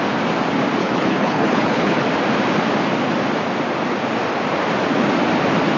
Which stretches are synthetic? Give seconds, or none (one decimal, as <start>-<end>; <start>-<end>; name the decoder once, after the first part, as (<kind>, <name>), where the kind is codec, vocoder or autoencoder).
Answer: 0.8-2.0 (codec, HILCodec)

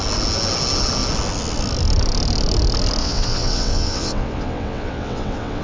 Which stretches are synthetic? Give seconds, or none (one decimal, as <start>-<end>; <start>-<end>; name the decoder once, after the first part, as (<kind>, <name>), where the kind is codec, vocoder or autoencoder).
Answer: 3.0-5.6 (vocoder, WaveNeXt)